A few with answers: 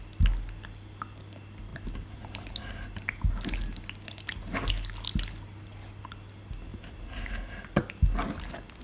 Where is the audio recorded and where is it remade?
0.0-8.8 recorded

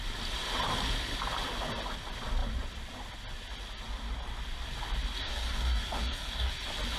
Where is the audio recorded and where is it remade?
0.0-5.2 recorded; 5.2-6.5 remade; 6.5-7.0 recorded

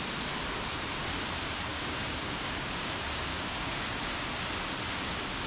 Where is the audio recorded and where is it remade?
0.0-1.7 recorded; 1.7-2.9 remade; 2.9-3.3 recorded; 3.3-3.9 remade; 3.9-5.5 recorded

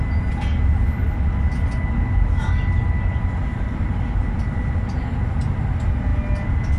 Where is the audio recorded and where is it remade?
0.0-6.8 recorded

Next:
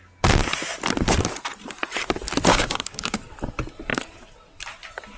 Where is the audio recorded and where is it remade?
0.0-2.5 recorded; 2.5-3.2 remade; 3.2-5.2 recorded

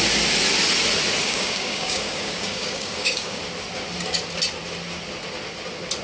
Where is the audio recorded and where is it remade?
0.0-1.2 recorded; 1.2-3.4 remade; 3.4-6.0 recorded

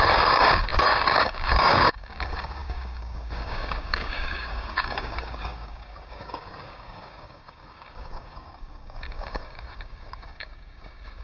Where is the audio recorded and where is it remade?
0.0-11.2 remade

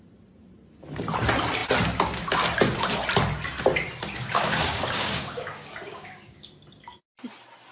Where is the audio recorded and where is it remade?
0.0-4.2 recorded; 4.2-6.5 remade; 6.5-7.7 recorded